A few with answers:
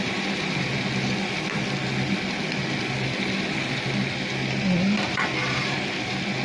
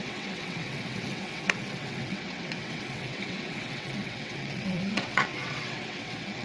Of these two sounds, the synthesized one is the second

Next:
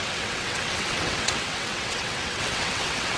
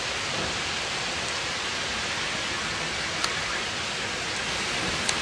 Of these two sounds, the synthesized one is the first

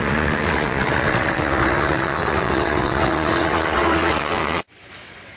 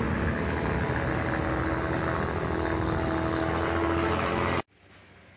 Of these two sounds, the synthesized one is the first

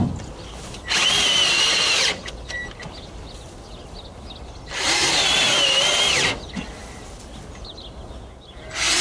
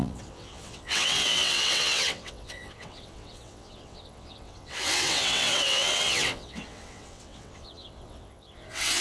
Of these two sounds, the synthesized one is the second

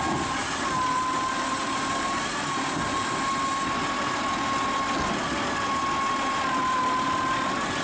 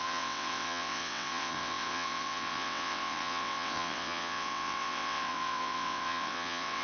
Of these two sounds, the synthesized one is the second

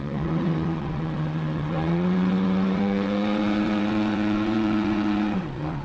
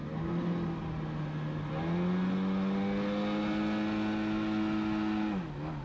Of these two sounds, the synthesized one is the first